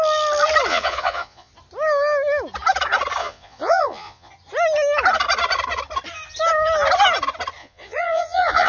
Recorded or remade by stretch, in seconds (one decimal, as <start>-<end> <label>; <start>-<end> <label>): 0.0-0.7 recorded; 0.7-1.5 remade; 1.5-3.2 recorded; 3.2-4.3 remade; 4.3-7.6 recorded; 7.6-8.7 remade